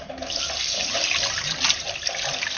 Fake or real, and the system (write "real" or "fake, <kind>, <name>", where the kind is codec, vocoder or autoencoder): real